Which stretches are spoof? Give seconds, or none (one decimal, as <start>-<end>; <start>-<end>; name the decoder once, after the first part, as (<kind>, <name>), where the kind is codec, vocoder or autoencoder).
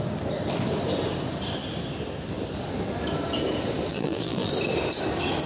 3.9-4.5 (vocoder, BigVGAN v2)